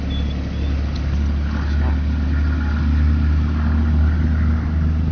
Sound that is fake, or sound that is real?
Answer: real